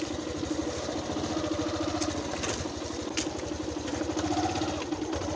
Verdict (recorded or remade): recorded